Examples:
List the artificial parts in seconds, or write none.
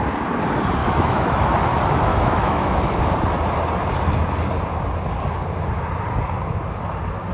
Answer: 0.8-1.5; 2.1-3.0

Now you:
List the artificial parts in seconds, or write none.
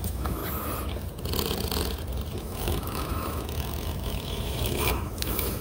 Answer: 0.0-0.4; 2.4-5.6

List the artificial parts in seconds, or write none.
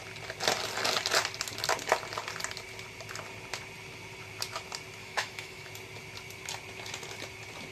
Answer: 5.0-5.7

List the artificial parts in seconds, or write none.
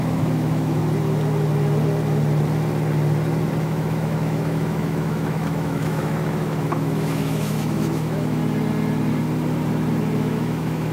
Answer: 0.0-0.8; 3.6-8.4; 10.2-10.9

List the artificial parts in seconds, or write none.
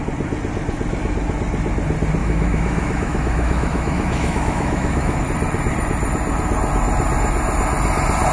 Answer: 2.2-5.2